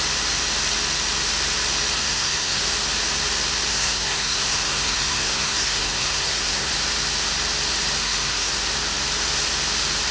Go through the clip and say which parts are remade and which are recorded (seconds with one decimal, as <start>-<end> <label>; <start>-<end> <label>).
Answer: 0.0-2.0 recorded; 2.0-2.6 remade; 2.6-3.7 recorded; 3.7-6.7 remade; 6.7-8.0 recorded; 8.0-8.5 remade; 8.5-10.1 recorded

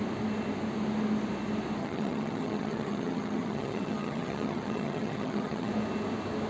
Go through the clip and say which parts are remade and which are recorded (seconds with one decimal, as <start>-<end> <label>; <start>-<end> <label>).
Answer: 0.0-1.8 recorded; 1.8-5.7 remade; 5.7-6.5 recorded

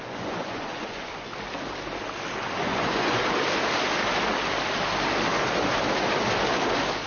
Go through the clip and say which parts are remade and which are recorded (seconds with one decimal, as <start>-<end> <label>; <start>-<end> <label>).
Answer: 0.0-1.3 remade; 1.3-2.6 recorded; 2.6-3.2 remade; 3.2-7.1 recorded

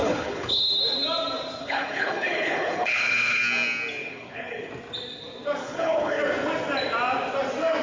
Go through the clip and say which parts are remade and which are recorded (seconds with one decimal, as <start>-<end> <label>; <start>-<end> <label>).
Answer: 0.0-0.6 remade; 0.6-1.6 recorded; 1.6-3.4 remade; 3.4-4.0 recorded; 4.0-4.7 remade; 4.7-5.6 recorded; 5.6-6.2 remade; 6.2-7.8 recorded